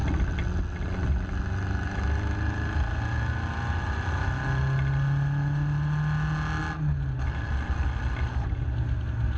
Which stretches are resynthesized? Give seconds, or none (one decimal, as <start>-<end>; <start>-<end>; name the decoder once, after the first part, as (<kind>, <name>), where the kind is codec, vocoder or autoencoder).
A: none